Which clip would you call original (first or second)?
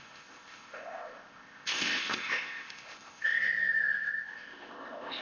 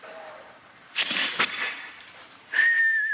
second